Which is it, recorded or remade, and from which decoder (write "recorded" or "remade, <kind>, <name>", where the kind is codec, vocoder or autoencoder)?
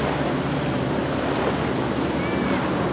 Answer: recorded